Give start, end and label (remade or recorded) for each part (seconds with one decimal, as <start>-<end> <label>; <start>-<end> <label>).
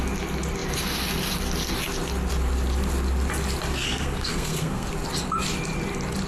0.0-3.7 recorded; 3.7-4.9 remade; 4.9-6.3 recorded